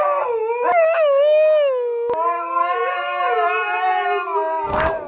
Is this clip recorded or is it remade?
recorded